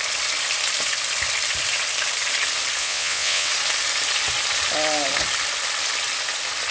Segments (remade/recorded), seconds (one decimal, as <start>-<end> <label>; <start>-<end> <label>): 0.0-2.8 recorded; 2.8-3.5 remade; 3.5-6.7 recorded